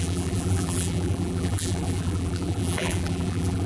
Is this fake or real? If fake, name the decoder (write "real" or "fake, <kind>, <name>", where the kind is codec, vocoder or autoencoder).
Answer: fake, vocoder, BigVGAN v2